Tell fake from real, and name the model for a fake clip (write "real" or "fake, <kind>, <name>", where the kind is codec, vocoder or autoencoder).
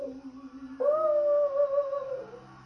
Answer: real